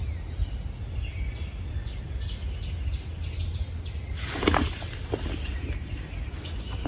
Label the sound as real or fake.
real